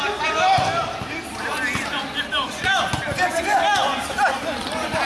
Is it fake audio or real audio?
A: real